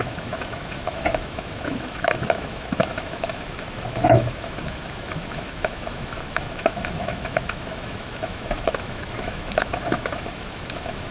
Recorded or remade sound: remade